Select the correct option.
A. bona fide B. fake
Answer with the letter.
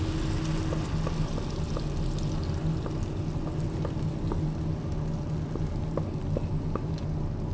A